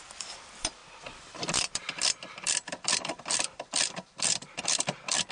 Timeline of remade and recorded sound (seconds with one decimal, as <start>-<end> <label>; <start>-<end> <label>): 0.0-0.8 remade; 0.8-2.7 recorded; 2.7-5.3 remade